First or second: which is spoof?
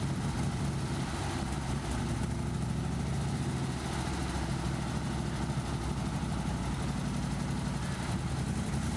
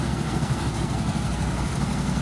second